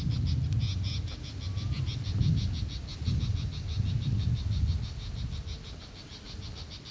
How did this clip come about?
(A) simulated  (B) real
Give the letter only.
B